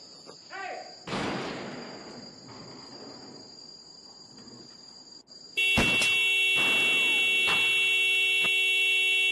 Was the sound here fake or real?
real